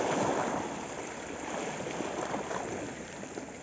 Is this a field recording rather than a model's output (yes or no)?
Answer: yes